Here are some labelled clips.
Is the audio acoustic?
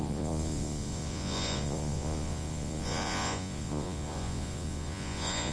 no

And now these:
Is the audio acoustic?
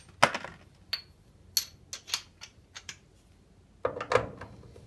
yes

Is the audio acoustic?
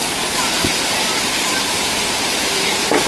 no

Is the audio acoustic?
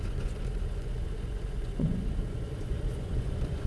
no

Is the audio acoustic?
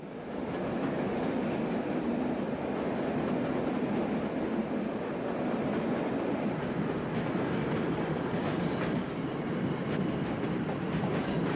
yes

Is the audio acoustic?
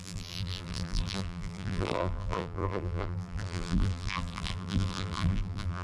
no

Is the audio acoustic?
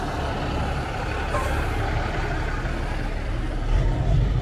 yes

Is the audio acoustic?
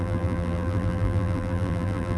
no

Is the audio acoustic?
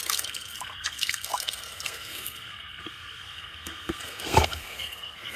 no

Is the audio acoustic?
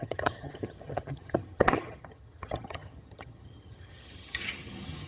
no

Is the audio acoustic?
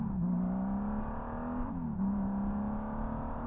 yes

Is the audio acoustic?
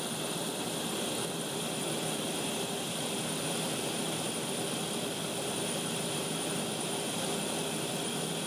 no